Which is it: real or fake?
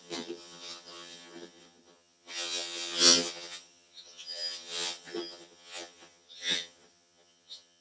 fake